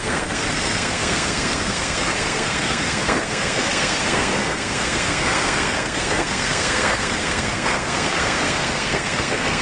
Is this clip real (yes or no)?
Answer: no